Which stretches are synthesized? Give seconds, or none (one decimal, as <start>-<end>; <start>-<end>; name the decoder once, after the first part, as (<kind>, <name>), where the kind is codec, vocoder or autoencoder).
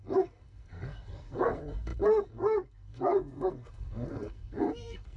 0.0-5.2 (codec, SNAC)